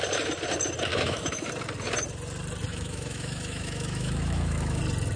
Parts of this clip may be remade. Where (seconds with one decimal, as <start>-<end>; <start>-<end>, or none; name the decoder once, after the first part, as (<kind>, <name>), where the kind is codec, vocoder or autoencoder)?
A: 0.9-1.5 (autoencoder, DAC-VAE); 2.7-4.8